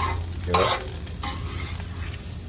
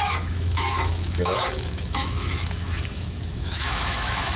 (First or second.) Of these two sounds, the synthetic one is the second